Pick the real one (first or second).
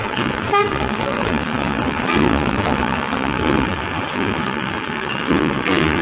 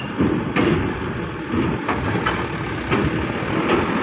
second